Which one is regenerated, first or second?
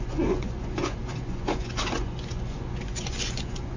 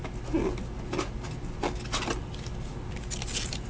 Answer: first